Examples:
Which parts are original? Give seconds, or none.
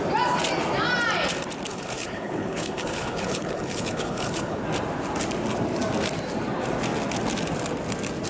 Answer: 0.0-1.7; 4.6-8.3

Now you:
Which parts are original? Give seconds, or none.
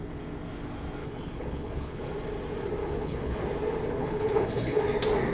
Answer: 0.0-1.0; 2.0-2.8; 3.4-4.0; 4.8-5.3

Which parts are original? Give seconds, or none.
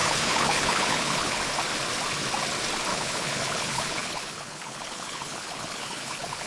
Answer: 1.4-2.9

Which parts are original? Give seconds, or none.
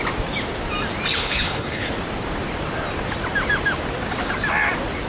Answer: 0.0-1.2; 1.9-5.1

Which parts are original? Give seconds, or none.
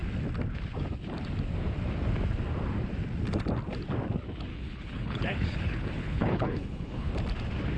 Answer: 0.0-4.5; 7.1-7.8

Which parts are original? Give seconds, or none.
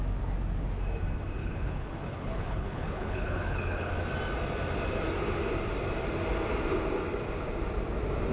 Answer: 0.0-1.4; 3.9-8.3